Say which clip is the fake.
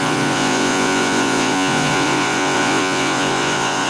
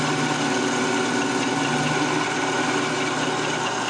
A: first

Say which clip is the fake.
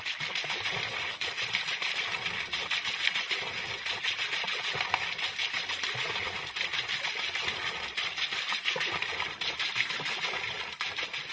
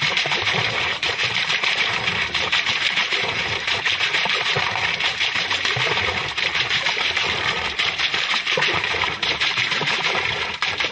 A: second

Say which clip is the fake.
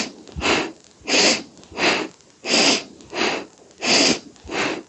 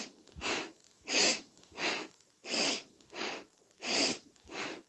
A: second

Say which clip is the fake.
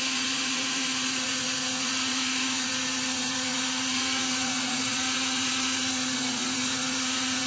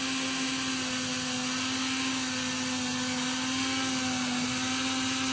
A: first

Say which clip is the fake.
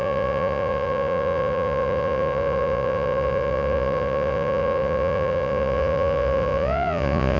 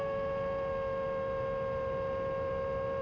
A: first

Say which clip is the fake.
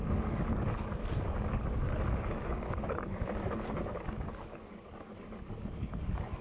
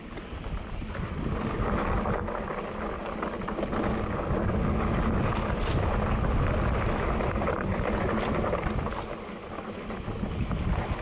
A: first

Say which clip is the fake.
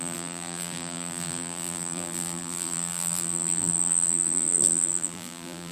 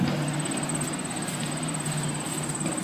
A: first